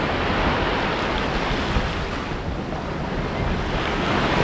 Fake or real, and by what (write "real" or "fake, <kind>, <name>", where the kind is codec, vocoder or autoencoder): real